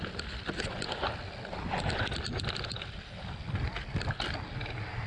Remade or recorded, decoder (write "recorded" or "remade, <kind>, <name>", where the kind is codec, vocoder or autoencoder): recorded